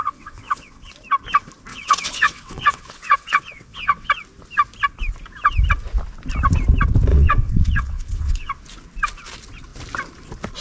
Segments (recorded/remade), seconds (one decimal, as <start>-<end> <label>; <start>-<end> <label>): 0.0-0.9 remade; 0.9-1.7 recorded; 1.7-4.1 remade; 4.1-7.1 recorded; 7.1-8.5 remade; 8.5-10.6 recorded